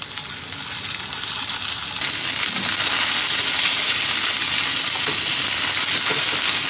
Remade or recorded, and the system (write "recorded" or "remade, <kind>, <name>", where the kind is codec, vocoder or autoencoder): recorded